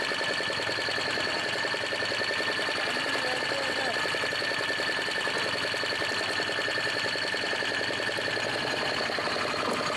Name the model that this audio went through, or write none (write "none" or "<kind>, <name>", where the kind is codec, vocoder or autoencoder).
none